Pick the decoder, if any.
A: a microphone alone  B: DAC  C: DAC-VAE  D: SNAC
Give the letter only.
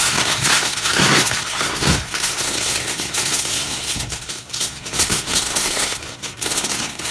D